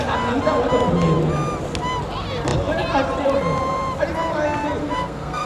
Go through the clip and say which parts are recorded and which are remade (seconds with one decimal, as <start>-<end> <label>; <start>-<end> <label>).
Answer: 0.0-4.8 recorded; 4.8-5.5 remade